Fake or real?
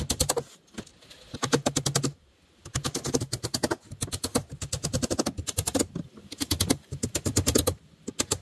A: real